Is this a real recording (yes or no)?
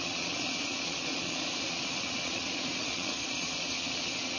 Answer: no